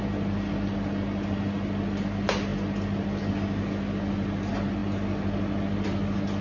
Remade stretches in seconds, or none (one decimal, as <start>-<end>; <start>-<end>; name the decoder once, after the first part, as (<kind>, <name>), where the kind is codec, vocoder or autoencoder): none